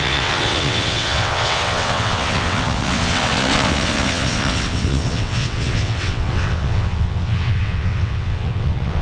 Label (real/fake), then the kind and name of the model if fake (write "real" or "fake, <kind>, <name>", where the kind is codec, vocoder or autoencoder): fake, vocoder, WaveNeXt